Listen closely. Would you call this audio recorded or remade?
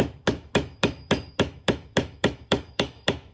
remade